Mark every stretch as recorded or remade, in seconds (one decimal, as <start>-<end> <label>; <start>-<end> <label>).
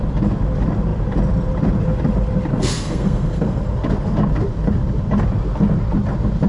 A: 0.0-2.5 recorded; 2.5-3.6 remade; 3.6-6.5 recorded